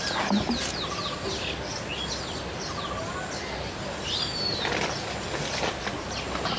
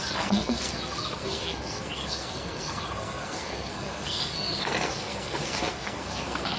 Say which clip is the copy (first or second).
second